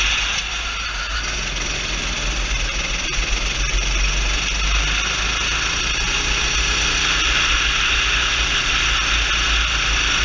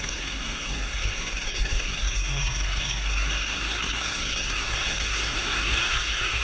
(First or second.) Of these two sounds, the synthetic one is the second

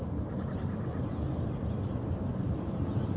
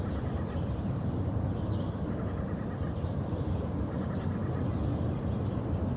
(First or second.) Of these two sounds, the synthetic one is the first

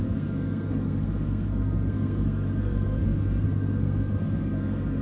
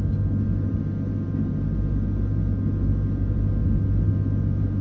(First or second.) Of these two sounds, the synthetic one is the first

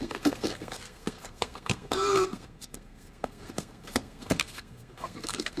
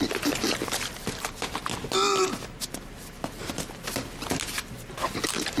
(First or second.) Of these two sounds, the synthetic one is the first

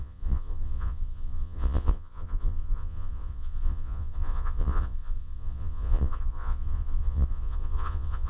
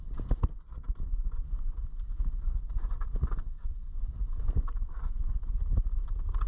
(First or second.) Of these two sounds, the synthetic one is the first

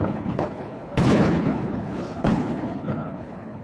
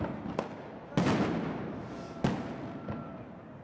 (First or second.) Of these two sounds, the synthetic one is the first